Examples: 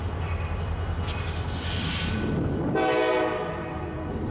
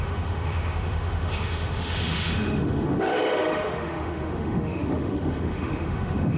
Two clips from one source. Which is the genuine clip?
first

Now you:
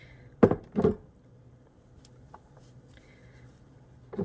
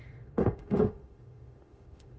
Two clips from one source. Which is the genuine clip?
first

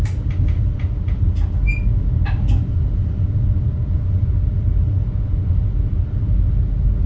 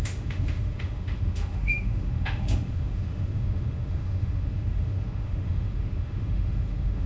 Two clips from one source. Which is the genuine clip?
first